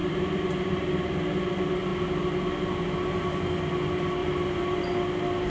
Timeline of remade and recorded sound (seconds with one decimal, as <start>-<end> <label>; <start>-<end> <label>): 0.0-1.5 remade; 1.5-4.2 recorded; 4.2-4.8 remade; 4.8-5.5 recorded